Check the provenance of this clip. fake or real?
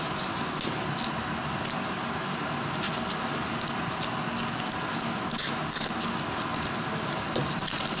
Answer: real